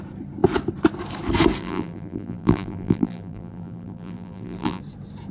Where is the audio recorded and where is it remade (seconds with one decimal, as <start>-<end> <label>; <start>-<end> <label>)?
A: 0.0-1.6 recorded; 1.6-4.8 remade; 4.8-5.3 recorded